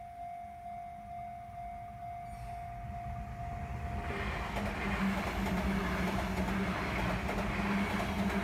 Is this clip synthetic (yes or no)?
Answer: no